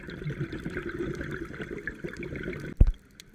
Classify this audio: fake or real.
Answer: real